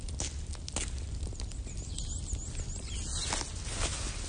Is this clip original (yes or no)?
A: yes